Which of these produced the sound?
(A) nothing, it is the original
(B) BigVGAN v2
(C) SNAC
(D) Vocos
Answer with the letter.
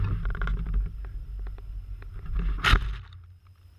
A